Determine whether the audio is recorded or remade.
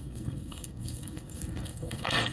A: remade